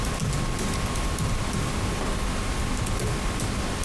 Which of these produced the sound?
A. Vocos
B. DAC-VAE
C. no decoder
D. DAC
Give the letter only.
C